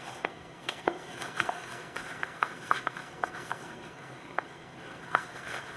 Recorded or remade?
remade